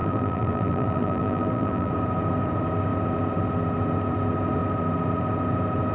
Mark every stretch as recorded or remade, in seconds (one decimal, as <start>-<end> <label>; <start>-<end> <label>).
0.0-1.9 remade; 1.9-5.9 recorded